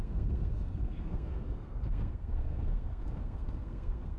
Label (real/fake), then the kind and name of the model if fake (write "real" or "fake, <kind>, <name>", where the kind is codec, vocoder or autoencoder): fake, codec, SNAC